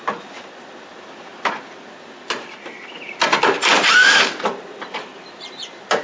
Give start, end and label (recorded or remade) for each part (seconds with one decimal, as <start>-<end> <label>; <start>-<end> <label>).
0.0-6.0 recorded

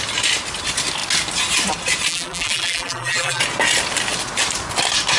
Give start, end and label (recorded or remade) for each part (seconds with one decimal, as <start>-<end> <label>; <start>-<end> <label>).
0.0-2.1 recorded; 2.1-3.4 remade; 3.4-5.2 recorded

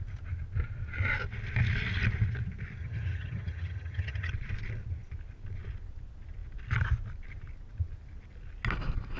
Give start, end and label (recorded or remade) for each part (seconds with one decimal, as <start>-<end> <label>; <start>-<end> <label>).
0.0-2.8 recorded; 2.8-4.3 remade; 4.3-9.2 recorded

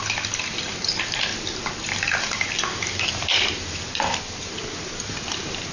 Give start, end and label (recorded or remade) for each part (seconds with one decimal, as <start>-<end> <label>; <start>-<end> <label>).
0.0-5.7 recorded

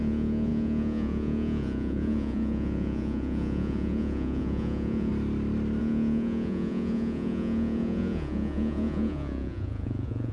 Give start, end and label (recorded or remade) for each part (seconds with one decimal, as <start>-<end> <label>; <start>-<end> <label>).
0.0-5.1 remade; 5.1-5.8 recorded; 5.8-10.3 remade

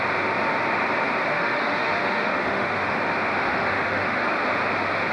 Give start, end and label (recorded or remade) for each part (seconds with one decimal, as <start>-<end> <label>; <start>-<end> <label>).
0.0-1.3 recorded; 1.3-3.0 remade; 3.0-3.4 recorded; 3.4-4.2 remade; 4.2-5.1 recorded

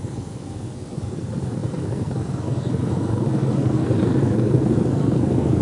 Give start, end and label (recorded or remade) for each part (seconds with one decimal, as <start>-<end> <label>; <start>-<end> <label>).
0.0-5.6 remade